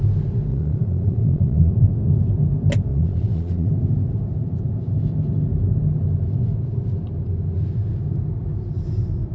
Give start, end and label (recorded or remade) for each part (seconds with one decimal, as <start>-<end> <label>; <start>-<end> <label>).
0.0-0.5 recorded; 0.5-1.7 remade; 1.7-2.9 recorded; 2.9-3.7 remade; 3.7-9.3 recorded